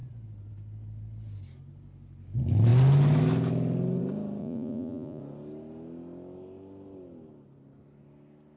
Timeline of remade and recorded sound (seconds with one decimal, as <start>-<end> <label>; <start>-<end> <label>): 0.0-4.4 recorded; 4.4-5.2 remade; 5.2-8.6 recorded